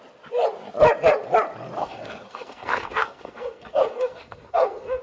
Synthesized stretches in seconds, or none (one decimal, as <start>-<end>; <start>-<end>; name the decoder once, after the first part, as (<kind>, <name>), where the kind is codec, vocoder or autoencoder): 1.8-5.0 (codec, SNAC)